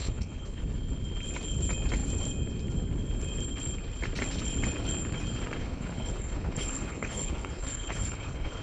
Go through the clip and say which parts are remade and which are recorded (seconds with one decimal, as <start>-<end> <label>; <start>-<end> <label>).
0.0-0.6 remade; 0.6-5.6 recorded; 5.6-8.6 remade